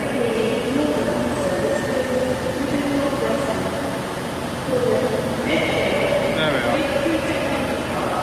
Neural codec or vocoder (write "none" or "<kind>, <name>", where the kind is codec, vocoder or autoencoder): none